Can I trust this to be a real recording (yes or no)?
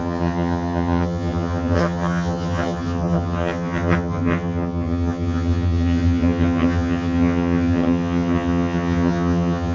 no